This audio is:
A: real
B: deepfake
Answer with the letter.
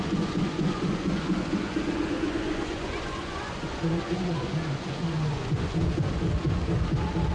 B